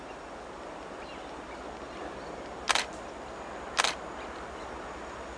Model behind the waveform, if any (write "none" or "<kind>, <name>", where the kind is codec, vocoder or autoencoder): none